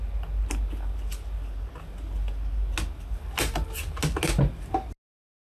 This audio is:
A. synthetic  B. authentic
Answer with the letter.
B